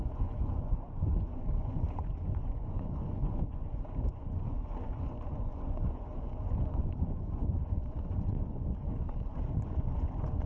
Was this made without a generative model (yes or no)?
no